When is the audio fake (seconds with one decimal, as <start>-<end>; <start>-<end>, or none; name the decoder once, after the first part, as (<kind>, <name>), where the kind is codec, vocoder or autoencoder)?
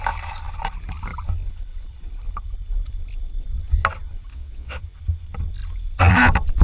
4.3-4.8 (vocoder, WaveNeXt)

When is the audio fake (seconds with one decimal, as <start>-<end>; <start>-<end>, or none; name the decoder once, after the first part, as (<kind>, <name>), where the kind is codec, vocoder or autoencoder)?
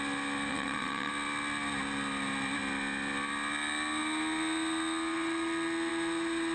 0.5-1.1 (vocoder, WaveNeXt)